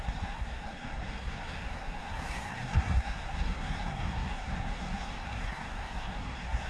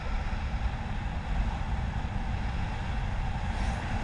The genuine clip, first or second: second